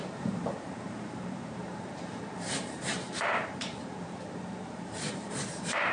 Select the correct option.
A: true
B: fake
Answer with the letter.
B